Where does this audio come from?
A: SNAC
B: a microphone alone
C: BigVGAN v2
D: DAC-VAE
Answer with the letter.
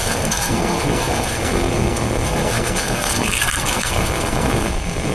A